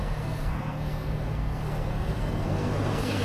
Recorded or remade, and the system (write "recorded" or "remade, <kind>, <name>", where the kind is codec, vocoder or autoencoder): remade, codec, SNAC